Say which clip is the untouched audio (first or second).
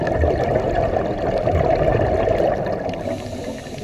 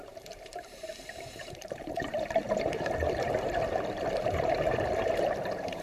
first